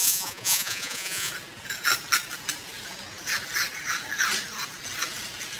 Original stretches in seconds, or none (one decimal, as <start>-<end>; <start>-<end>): 1.3-5.6